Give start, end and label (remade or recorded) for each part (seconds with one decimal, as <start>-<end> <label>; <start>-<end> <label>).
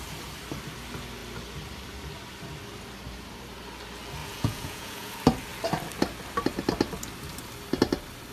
0.0-4.2 recorded; 4.2-5.1 remade; 5.1-8.3 recorded